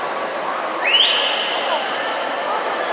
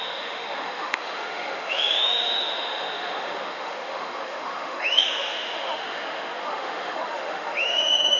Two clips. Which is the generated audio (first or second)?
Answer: second